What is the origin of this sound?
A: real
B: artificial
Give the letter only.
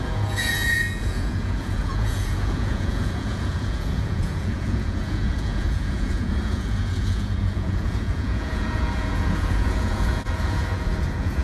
B